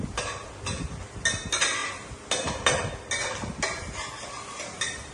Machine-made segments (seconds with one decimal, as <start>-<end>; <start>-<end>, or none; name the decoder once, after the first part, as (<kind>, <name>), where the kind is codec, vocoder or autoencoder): none